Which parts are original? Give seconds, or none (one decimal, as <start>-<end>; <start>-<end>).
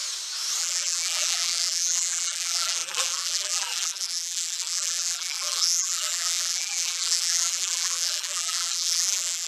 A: 0.0-0.6